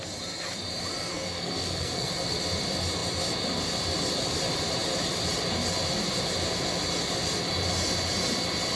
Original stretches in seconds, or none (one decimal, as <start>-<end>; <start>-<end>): 0.0-1.1; 2.1-8.8